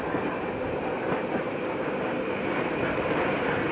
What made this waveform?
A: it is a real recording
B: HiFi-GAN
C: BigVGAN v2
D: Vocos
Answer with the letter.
A